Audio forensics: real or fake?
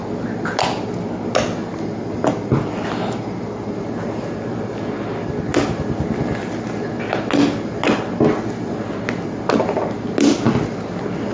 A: real